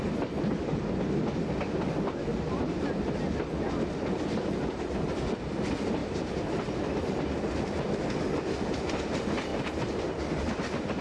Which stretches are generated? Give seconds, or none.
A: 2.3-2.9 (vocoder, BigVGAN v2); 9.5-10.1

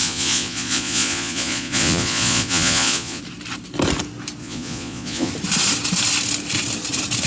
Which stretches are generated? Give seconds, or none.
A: 0.0-3.2 (vocoder, Vocos); 4.4-5.3

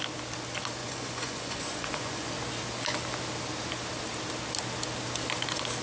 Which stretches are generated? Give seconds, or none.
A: 0.8-2.3 (vocoder, Vocos)

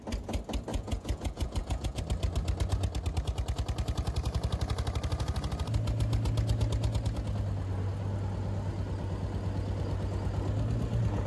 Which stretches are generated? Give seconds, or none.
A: 0.7-2.0 (vocoder, Vocos)